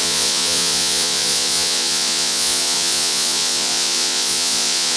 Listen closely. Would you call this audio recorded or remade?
remade